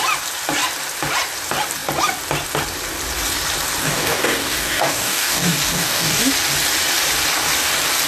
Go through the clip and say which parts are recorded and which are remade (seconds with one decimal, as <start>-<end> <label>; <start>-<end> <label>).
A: 0.0-3.8 recorded; 3.8-6.3 remade; 6.3-8.1 recorded